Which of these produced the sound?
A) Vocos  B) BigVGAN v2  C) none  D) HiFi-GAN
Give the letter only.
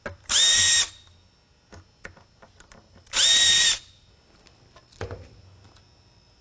C